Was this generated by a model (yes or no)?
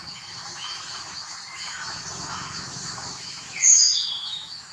yes